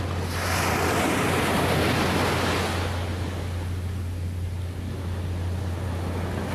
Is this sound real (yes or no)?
yes